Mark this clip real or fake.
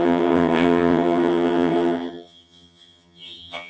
fake